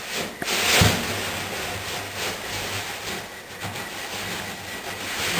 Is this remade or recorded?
recorded